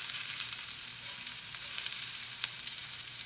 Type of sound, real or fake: fake